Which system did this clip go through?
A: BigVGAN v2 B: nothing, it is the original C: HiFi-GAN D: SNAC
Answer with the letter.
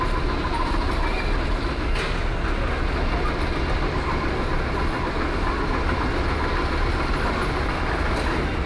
B